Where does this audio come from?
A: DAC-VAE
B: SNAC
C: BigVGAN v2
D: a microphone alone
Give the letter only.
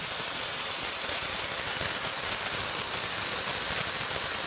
D